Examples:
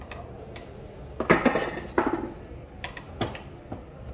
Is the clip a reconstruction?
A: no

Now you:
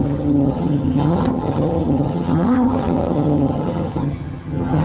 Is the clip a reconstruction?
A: yes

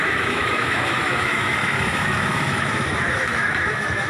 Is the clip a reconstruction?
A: yes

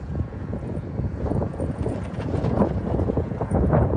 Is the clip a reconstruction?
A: yes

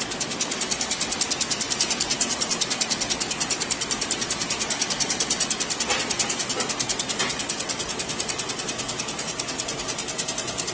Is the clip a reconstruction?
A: no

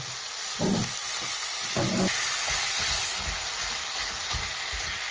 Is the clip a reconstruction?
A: no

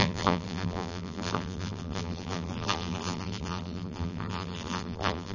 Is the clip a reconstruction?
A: yes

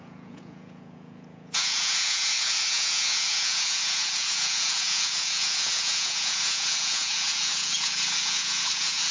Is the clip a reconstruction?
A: yes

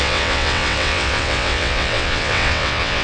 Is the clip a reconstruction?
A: yes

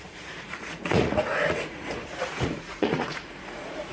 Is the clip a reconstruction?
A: yes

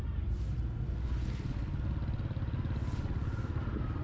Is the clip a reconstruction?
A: no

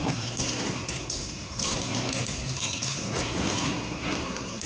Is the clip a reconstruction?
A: yes